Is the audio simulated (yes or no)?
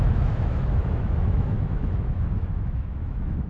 yes